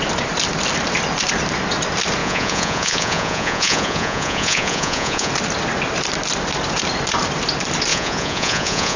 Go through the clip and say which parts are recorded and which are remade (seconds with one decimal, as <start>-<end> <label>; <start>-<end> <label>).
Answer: 0.0-2.2 recorded; 2.2-5.3 remade; 5.3-7.9 recorded; 7.9-9.0 remade